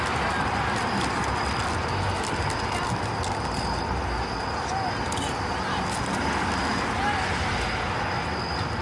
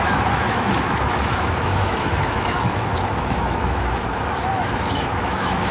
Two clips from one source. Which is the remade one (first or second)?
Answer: second